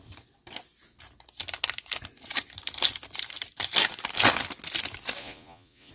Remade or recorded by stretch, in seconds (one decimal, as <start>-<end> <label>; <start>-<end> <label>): 0.0-5.2 recorded; 5.2-5.9 remade